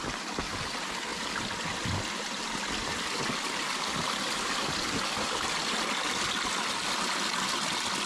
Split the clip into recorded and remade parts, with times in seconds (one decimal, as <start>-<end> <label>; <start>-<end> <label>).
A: 0.0-8.1 recorded